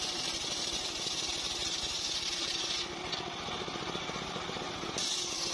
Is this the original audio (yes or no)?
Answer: yes